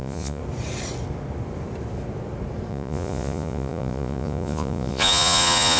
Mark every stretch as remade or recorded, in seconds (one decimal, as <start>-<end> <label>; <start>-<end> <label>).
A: 0.0-0.4 remade; 0.4-2.7 recorded; 2.7-5.8 remade